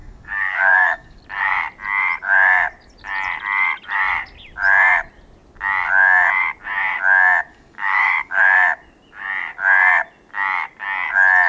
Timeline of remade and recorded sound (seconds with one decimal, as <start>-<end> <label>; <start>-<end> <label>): 0.0-1.2 remade; 1.2-7.5 recorded; 7.5-8.4 remade; 8.4-11.5 recorded